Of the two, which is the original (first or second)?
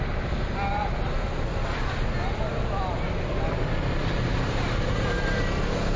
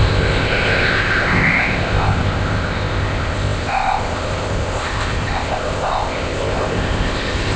first